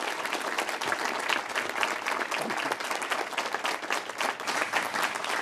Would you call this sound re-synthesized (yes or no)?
no